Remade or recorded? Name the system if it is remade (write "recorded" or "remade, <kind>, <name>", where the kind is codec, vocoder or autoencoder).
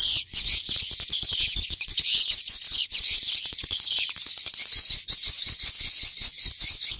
remade, vocoder, Vocos